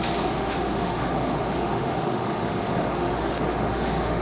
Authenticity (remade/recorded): remade